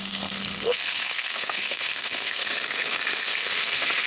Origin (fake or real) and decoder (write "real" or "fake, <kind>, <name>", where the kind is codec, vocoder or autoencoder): fake, codec, SNAC